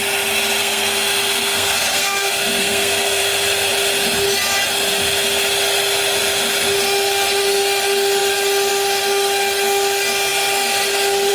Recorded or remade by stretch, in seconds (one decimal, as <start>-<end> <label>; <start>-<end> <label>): 0.0-0.6 recorded; 0.6-3.2 remade; 3.2-11.3 recorded